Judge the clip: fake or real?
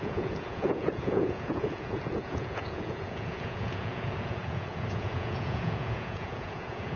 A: fake